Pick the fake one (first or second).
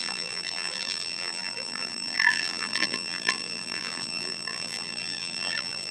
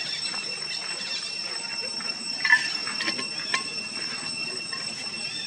first